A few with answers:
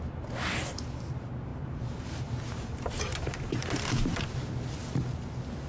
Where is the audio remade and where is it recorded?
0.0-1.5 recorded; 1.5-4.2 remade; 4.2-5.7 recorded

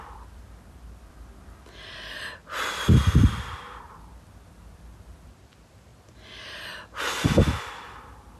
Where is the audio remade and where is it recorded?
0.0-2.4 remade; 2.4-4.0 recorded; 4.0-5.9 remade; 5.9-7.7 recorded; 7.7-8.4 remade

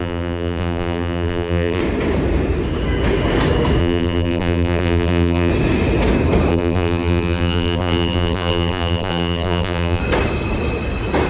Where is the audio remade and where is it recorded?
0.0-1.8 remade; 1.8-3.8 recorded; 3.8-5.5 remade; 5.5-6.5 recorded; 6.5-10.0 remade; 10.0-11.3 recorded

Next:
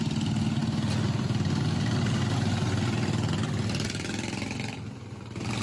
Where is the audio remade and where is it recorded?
0.0-5.6 recorded

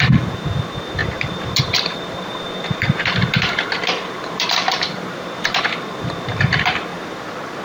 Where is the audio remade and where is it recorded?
0.0-1.0 recorded; 1.0-5.6 remade; 5.6-7.6 recorded

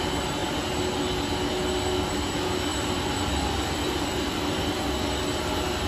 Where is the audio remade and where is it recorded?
0.0-2.7 recorded; 2.7-4.9 remade; 4.9-5.9 recorded